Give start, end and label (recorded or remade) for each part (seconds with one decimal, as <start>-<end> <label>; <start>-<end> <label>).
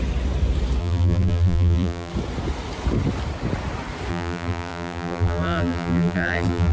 0.0-0.8 recorded; 0.8-2.1 remade; 2.1-4.1 recorded; 4.1-6.7 remade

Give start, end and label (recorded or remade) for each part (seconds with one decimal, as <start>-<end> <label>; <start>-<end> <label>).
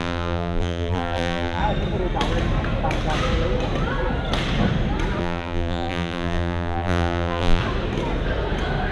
0.0-1.6 remade; 1.6-5.2 recorded; 5.2-7.6 remade; 7.6-8.9 recorded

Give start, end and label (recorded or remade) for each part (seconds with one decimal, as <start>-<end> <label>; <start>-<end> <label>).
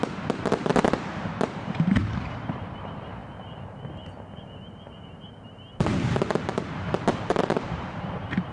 0.0-0.7 remade; 0.7-1.4 recorded; 1.4-3.2 remade; 3.2-5.0 recorded; 5.0-8.5 remade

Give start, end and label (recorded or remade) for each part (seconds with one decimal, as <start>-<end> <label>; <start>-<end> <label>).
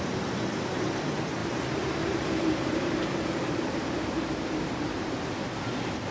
0.0-1.4 recorded; 1.4-5.1 remade; 5.1-6.1 recorded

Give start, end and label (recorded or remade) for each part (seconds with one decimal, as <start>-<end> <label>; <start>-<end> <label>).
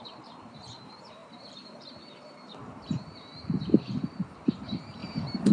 0.0-5.5 remade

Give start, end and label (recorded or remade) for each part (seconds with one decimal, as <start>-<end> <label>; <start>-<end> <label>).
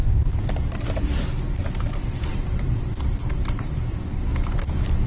0.0-1.7 recorded; 1.7-4.3 remade; 4.3-5.1 recorded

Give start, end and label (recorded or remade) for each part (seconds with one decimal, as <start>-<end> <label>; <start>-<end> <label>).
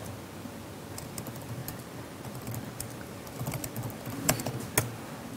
0.0-5.4 recorded